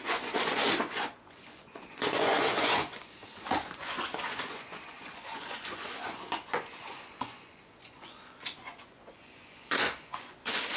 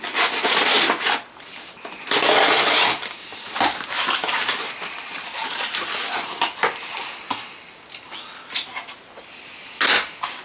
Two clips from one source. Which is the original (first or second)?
second